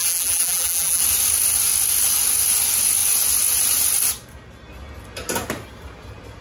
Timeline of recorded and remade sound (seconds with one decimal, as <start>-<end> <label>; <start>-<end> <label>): 0.0-1.0 remade; 1.0-6.4 recorded